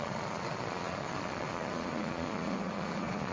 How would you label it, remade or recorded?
remade